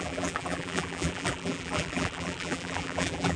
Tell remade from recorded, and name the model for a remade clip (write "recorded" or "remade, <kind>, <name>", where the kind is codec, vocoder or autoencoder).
remade, vocoder, BigVGAN v2